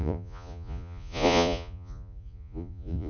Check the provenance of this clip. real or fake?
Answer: fake